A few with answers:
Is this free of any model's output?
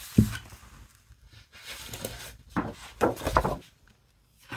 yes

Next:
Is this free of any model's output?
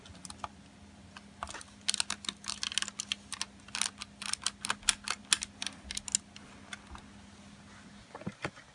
yes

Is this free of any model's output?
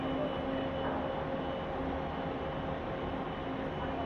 yes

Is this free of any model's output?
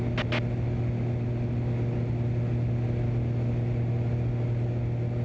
yes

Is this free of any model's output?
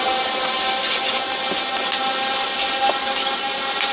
yes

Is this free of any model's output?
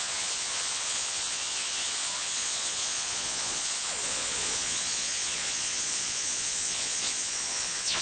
no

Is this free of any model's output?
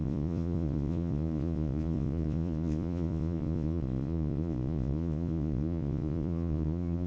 no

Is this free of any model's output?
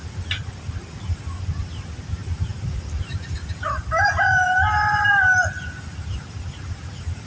yes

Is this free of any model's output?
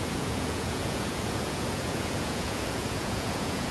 no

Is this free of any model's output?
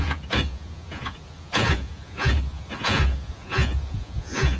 no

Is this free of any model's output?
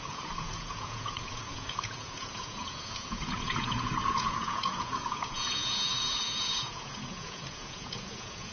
no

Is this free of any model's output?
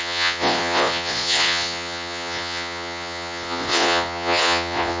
no